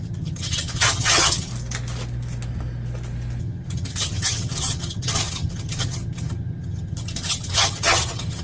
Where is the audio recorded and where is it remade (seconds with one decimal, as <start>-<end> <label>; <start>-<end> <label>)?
0.0-1.5 remade; 1.5-3.4 recorded; 3.4-8.4 remade